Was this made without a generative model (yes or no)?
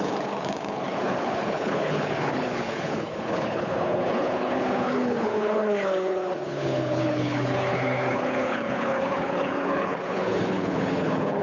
no